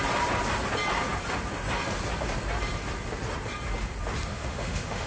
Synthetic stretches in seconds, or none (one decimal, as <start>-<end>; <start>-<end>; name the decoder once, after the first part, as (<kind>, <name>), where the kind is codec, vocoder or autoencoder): 4.3-5.1 (autoencoder, DAC-VAE)